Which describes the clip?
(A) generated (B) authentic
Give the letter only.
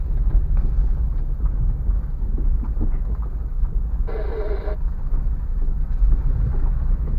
B